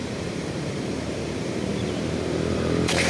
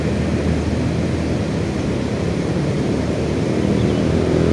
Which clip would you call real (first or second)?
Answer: second